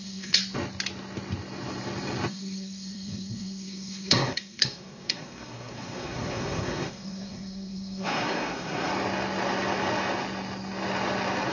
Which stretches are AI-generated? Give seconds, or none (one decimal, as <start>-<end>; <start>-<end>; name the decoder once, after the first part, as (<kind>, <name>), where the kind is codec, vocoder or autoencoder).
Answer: 0.0-0.4 (codec, SNAC); 2.3-8.9